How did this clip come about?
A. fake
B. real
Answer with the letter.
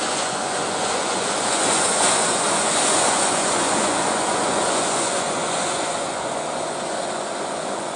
A